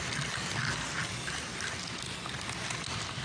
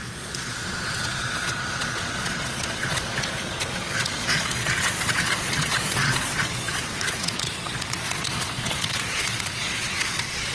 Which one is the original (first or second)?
first